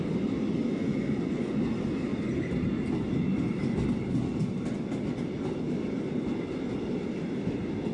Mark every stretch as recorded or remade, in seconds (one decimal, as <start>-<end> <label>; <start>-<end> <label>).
0.0-0.8 recorded; 0.8-1.6 remade; 1.6-7.9 recorded